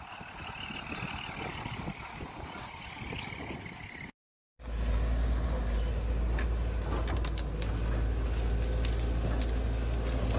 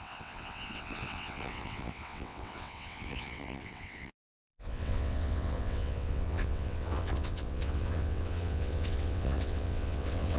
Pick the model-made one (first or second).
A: second